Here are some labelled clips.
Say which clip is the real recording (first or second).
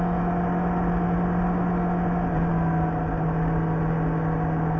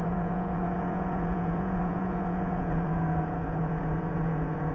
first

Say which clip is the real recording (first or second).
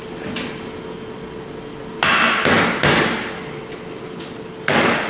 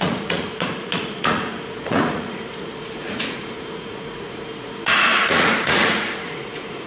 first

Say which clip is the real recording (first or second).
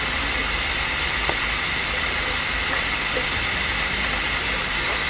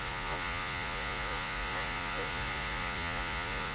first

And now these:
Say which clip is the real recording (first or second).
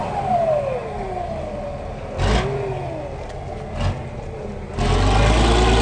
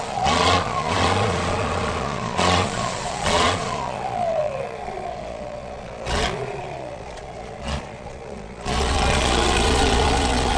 first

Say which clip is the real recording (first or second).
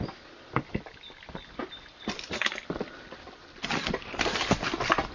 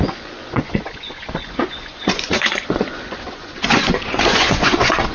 first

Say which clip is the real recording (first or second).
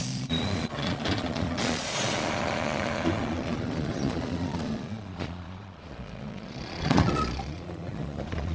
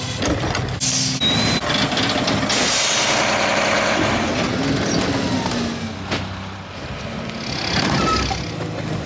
second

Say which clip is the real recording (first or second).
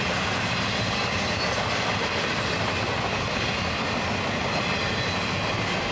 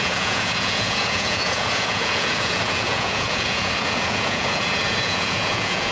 first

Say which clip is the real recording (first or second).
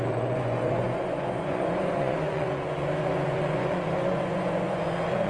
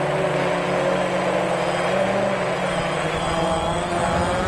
second